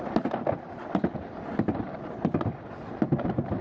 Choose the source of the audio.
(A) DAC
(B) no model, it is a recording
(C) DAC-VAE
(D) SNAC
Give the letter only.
B